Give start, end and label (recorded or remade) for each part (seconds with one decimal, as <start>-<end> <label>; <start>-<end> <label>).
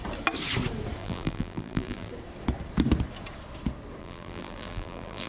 0.0-1.0 recorded; 1.0-2.1 remade; 2.1-4.0 recorded; 4.0-5.3 remade